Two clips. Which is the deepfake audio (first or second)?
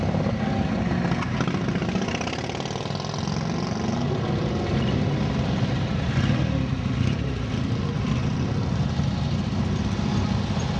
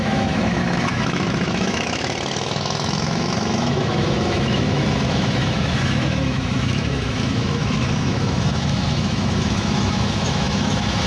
second